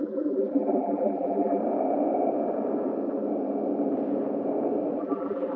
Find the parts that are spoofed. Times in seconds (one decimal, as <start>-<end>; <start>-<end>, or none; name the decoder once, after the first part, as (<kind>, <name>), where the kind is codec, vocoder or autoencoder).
0.0-1.6 (vocoder, BigVGAN v2); 5.0-5.6